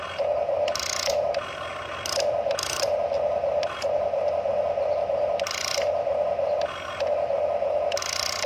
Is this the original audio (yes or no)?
yes